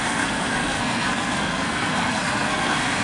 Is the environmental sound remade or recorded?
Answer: remade